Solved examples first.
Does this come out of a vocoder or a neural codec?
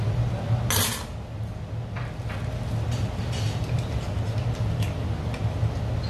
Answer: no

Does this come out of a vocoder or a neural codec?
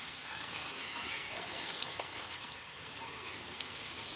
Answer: yes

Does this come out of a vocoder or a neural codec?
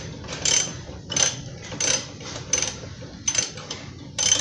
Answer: no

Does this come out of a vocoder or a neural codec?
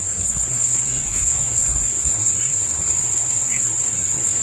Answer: yes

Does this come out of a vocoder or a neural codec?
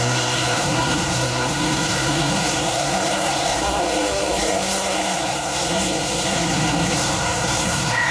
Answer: yes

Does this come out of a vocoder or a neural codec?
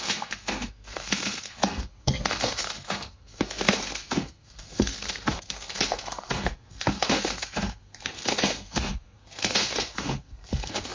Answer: yes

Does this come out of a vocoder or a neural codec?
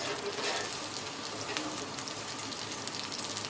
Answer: no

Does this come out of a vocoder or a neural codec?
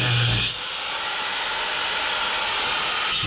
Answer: no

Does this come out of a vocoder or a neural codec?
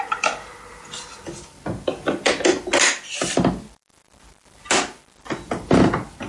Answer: no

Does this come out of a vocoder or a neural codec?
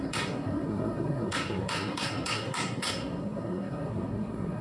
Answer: yes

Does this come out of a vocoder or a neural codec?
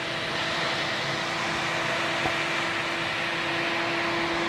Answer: no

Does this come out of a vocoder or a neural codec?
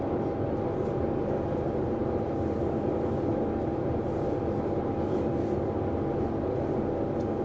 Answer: no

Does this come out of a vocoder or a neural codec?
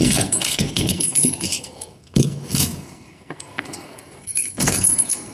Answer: yes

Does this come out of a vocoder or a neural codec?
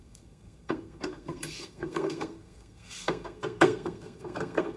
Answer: yes